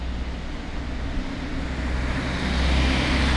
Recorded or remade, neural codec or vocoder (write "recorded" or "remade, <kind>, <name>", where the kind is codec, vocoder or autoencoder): recorded